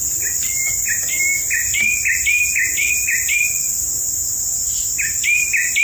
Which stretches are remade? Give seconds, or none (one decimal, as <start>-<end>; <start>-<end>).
0.0-4.2; 4.8-5.8